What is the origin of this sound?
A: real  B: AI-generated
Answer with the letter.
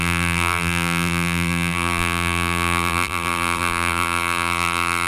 B